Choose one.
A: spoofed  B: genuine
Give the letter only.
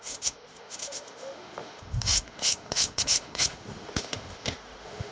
A